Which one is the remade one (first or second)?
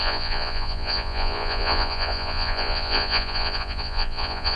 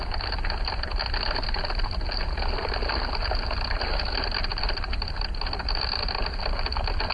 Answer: first